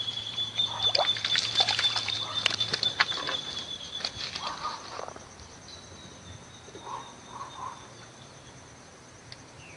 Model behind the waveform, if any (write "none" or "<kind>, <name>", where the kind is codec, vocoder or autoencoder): vocoder, BigVGAN v2